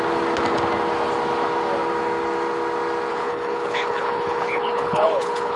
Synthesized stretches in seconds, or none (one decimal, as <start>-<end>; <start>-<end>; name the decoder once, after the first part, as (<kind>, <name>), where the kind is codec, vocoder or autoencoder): 3.1-5.6 (codec, HILCodec)